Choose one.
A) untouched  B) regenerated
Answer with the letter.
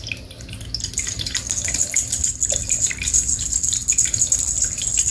A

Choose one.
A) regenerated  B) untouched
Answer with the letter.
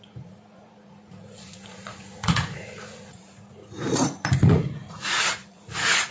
A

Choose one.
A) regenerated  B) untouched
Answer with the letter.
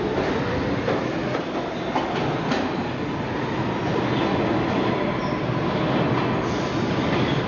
B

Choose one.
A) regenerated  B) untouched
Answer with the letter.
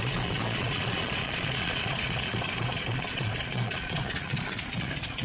A